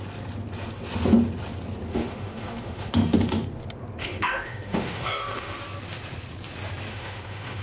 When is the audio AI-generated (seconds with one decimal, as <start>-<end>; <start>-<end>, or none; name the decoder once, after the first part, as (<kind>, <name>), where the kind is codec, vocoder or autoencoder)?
1.9-3.4 (autoencoder, DAC-VAE); 4.0-5.6; 6.9-7.6